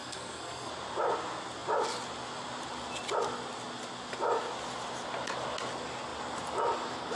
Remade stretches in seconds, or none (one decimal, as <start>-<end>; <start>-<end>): 0.0-0.7